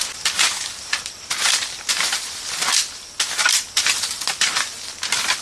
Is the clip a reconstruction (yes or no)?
no